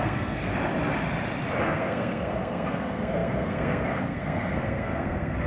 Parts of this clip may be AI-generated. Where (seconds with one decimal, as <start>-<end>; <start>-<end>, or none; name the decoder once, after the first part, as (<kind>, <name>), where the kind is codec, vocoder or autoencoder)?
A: 0.0-0.5 (codec, SNAC); 1.6-5.5